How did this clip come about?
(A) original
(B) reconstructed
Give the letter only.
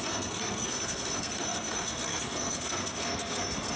B